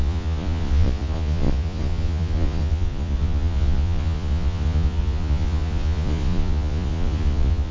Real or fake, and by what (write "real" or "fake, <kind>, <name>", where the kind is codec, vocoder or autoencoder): fake, vocoder, Vocos